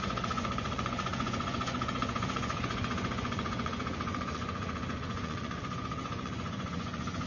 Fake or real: fake